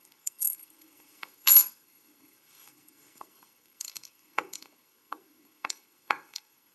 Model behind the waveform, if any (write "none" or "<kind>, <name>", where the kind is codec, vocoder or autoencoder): codec, SNAC